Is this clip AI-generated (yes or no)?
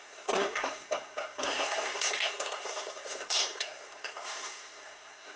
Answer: yes